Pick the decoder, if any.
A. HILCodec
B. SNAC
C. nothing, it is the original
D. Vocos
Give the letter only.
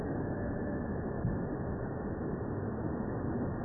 C